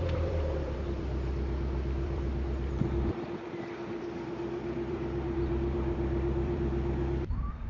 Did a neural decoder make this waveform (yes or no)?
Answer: yes